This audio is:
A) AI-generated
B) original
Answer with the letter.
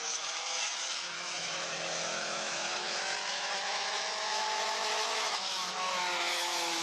A